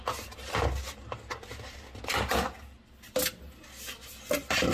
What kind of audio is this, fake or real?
real